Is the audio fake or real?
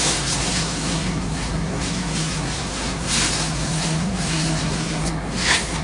fake